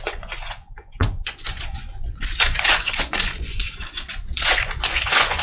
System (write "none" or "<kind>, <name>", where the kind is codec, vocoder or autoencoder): vocoder, Vocos